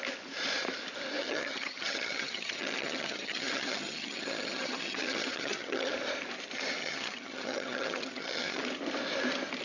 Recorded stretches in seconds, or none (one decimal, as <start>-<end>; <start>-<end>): 0.0-1.2; 5.9-6.8; 8.6-9.6